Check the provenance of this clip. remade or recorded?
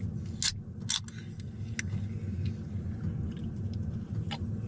recorded